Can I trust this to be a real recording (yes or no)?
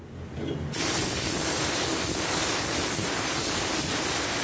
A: yes